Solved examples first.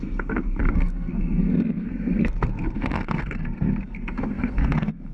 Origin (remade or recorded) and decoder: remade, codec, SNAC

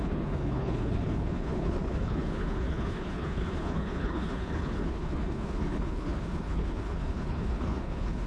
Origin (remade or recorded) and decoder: remade, codec, HILCodec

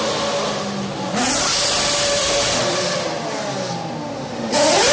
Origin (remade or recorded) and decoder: recorded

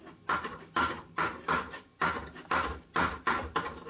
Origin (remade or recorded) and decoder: remade, vocoder, BigVGAN v2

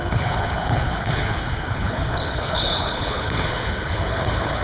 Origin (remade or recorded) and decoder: remade, codec, HILCodec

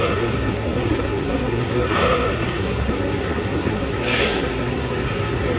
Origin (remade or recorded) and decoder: remade, codec, SNAC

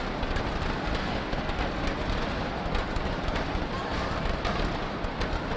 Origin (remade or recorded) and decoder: recorded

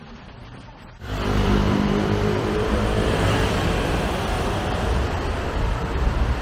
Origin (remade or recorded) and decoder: remade, vocoder, BigVGAN v2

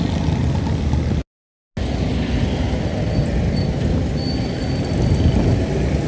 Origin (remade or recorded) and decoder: recorded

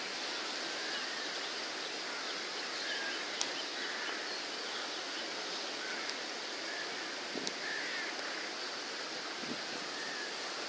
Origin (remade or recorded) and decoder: recorded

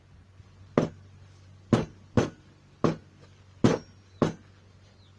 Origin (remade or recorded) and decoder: recorded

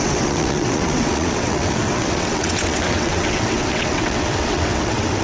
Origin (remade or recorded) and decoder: remade, vocoder, WaveNeXt